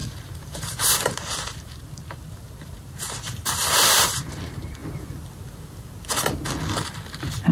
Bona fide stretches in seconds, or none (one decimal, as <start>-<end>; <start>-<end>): 4.8-7.5